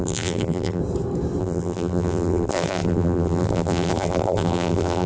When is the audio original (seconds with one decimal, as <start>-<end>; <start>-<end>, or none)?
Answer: 0.8-1.4